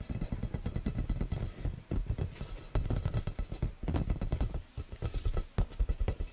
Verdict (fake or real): real